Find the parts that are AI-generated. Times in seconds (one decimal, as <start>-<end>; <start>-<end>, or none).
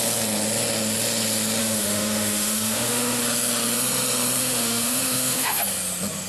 1.6-3.2; 4.4-5.6